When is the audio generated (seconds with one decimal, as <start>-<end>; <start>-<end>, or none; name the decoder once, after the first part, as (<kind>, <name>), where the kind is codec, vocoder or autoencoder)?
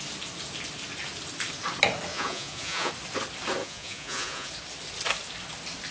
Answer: 2.1-2.9 (vocoder, Vocos); 3.6-4.5